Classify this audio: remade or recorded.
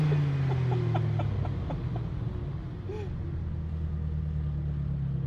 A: recorded